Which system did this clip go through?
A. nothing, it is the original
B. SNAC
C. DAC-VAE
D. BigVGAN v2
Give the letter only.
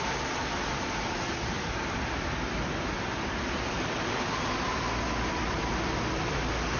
D